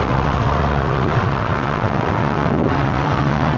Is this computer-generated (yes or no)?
yes